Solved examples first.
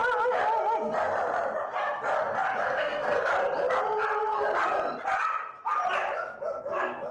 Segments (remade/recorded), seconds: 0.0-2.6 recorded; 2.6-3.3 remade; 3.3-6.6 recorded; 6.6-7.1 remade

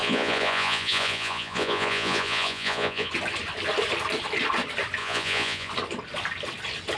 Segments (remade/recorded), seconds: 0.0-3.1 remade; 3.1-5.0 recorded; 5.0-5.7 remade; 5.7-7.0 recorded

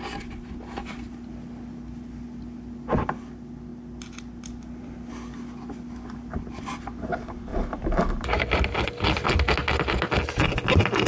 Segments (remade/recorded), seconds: 0.0-3.7 recorded; 3.7-5.1 remade; 5.1-7.5 recorded; 7.5-9.5 remade; 9.5-11.1 recorded